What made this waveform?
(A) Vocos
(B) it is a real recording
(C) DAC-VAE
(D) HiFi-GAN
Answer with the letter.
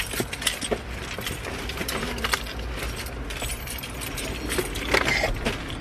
B